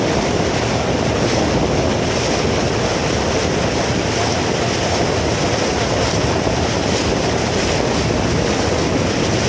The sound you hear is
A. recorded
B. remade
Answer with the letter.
A